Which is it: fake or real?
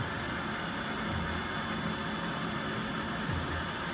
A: real